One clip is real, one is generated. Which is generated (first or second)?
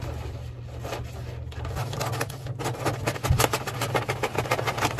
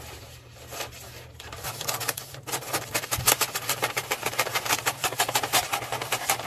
second